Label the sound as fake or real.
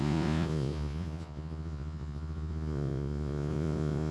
fake